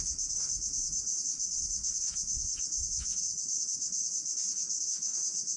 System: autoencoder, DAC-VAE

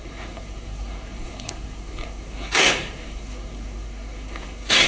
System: codec, SNAC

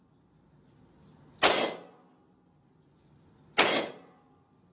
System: none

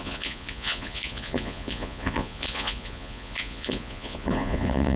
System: vocoder, Vocos